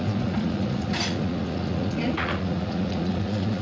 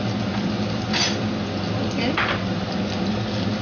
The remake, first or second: first